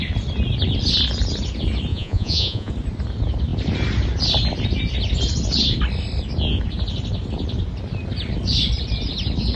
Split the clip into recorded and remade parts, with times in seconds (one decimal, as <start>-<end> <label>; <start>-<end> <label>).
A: 0.0-1.9 recorded; 1.9-2.7 remade; 2.7-9.6 recorded